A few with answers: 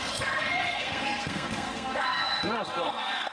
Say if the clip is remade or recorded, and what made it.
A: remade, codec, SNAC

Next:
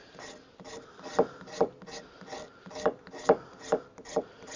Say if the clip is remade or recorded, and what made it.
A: recorded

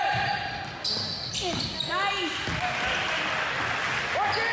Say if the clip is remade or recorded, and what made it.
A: recorded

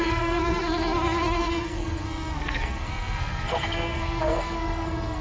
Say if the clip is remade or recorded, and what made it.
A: remade, codec, SNAC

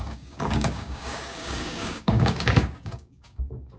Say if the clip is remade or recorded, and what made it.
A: remade, codec, DAC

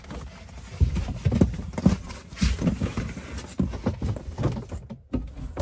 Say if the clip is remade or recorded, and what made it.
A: recorded